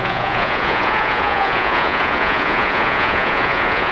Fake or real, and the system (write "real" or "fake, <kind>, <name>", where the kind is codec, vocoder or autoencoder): fake, vocoder, Vocos